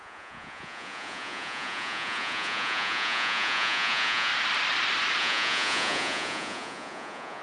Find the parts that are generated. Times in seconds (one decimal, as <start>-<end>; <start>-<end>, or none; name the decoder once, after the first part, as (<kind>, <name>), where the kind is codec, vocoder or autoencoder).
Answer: 0.0-4.3 (vocoder, Vocos); 5.2-7.4